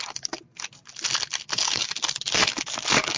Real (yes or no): yes